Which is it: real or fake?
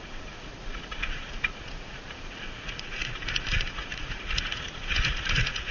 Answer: fake